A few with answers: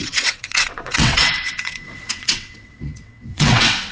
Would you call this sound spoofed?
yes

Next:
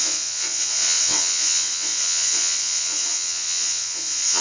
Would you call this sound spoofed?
yes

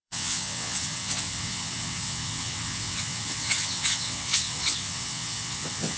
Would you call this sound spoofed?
yes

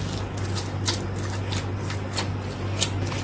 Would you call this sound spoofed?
no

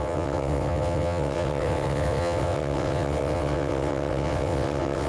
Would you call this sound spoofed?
yes